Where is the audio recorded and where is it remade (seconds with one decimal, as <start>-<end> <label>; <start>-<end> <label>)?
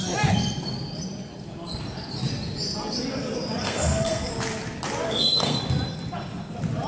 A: 0.0-3.6 recorded; 3.6-4.3 remade; 4.3-5.1 recorded; 5.1-5.6 remade; 5.6-6.9 recorded